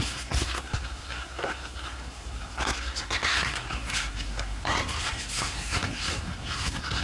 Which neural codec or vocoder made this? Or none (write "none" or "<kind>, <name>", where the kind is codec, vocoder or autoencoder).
codec, SNAC